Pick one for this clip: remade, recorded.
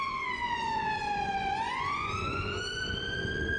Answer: remade